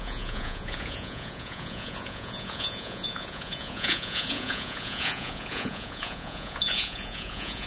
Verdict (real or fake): fake